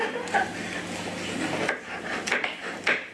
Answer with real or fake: real